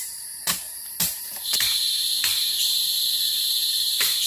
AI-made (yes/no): yes